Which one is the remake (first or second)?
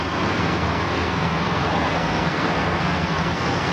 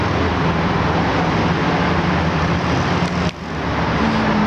first